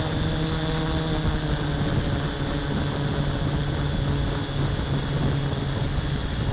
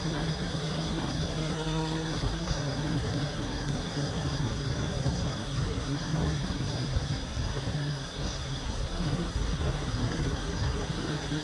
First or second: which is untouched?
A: first